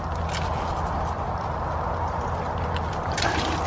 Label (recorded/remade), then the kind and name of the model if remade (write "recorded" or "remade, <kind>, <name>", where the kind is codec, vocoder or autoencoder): recorded